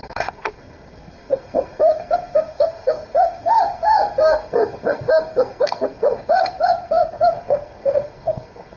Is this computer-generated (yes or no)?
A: yes